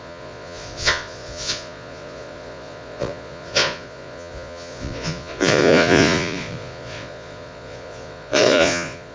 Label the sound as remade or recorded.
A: remade